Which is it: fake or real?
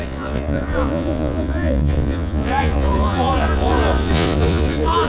fake